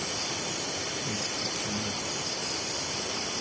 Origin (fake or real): real